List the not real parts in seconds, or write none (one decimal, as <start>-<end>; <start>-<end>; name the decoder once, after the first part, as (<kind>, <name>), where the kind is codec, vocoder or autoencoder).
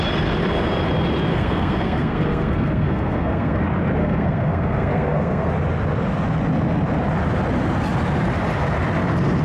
1.3-3.6 (codec, SNAC); 4.0-5.5